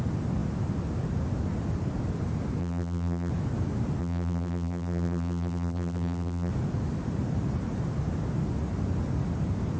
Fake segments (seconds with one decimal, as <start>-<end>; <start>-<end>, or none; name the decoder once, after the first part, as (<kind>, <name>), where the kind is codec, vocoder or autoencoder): 2.6-3.3 (vocoder, BigVGAN v2); 4.0-6.5